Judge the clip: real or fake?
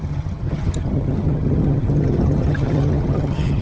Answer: fake